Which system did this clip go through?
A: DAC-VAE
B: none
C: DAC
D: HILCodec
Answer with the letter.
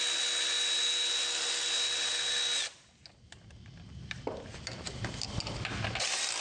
B